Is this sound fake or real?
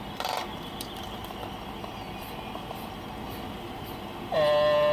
real